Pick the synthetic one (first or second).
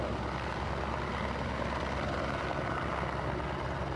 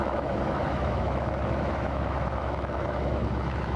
second